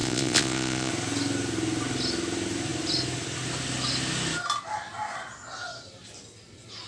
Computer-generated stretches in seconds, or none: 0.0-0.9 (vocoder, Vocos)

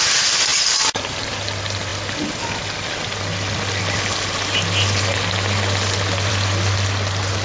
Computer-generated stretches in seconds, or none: none

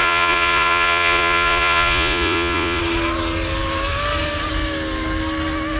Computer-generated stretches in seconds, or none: 0.0-2.8 (vocoder, Vocos)